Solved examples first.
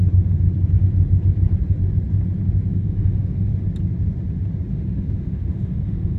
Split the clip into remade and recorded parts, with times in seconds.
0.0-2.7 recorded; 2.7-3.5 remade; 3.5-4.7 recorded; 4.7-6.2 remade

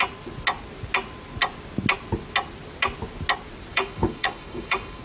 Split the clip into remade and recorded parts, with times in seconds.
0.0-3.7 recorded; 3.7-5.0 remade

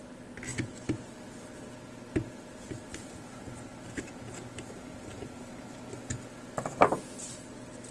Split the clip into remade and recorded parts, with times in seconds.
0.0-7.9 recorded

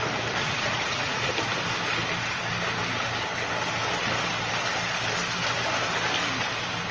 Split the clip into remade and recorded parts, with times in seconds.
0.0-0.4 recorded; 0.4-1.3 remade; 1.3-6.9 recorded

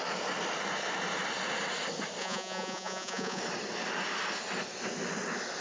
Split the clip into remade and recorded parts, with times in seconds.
0.0-2.2 recorded; 2.2-3.4 remade; 3.4-5.6 recorded

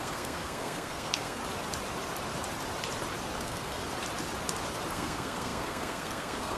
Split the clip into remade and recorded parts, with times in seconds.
0.0-1.4 remade; 1.4-3.4 recorded; 3.4-3.8 remade; 3.8-4.9 recorded; 4.9-6.6 remade

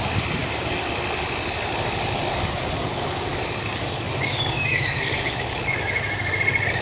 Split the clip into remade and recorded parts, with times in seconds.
0.0-2.9 recorded; 2.9-6.3 remade; 6.3-6.8 recorded

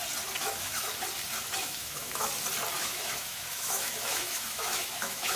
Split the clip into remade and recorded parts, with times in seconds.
0.0-0.4 recorded; 0.4-0.9 remade; 0.9-1.6 recorded; 1.6-2.3 remade; 2.3-2.8 recorded; 2.8-5.4 remade